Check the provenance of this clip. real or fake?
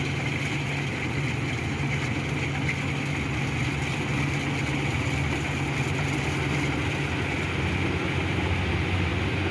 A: real